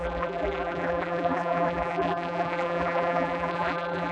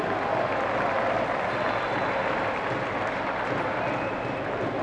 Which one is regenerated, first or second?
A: first